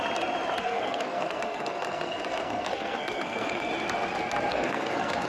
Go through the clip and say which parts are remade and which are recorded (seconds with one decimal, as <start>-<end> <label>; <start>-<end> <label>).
0.0-0.6 recorded; 0.6-3.7 remade; 3.7-4.5 recorded; 4.5-5.3 remade